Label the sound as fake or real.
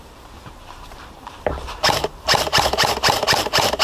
fake